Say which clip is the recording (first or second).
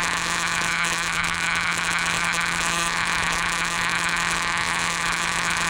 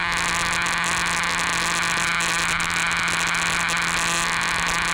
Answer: second